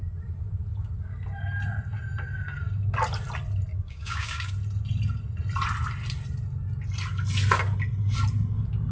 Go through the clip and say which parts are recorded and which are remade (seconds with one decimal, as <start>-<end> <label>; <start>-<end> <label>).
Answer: 0.0-3.7 recorded; 3.7-4.5 remade; 4.5-8.9 recorded